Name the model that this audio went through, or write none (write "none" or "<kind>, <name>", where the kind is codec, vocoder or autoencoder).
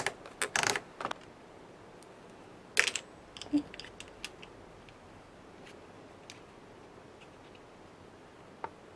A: none